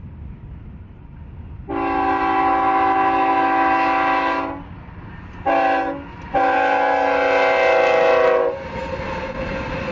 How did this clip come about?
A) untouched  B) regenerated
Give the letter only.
A